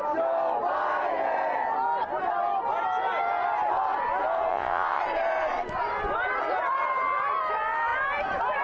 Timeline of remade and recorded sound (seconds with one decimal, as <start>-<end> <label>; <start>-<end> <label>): 0.0-4.5 recorded; 4.5-5.0 remade; 5.0-8.6 recorded